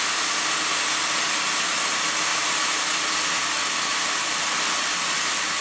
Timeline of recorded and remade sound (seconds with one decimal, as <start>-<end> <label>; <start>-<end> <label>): 0.0-5.6 recorded